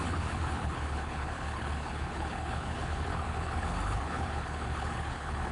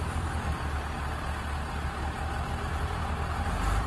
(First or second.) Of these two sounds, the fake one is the first